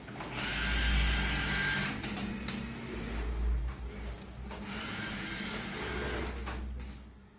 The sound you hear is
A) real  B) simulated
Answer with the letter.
A